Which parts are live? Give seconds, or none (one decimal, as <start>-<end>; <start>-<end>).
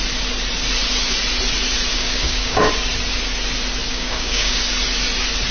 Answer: 0.0-1.9; 2.7-3.9; 4.6-5.5